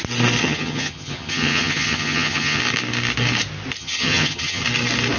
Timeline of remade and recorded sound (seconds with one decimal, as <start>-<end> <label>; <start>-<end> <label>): 0.0-0.4 recorded; 0.4-2.6 remade; 2.6-3.8 recorded; 3.8-4.6 remade; 4.6-5.2 recorded